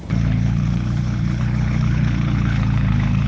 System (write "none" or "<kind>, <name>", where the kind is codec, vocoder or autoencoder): codec, HILCodec